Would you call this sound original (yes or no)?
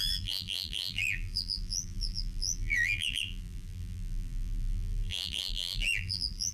no